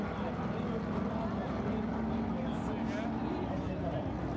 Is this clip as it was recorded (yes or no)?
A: yes